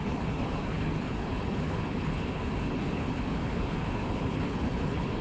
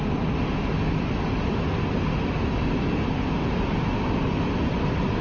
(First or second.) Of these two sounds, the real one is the second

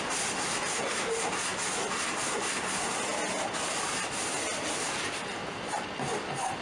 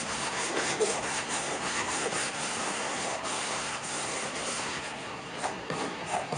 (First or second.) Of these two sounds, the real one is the first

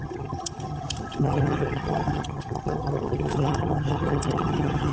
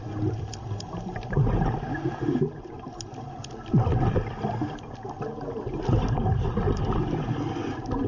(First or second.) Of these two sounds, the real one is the second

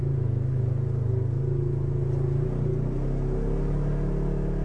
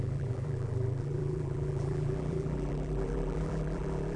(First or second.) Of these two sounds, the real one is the first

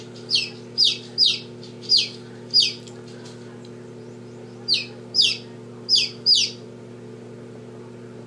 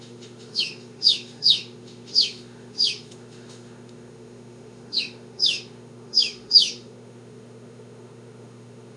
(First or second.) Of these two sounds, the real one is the first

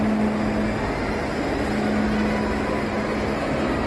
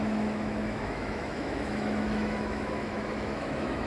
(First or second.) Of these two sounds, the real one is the first